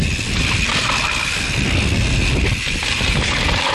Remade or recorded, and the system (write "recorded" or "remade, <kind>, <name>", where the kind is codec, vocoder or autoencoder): recorded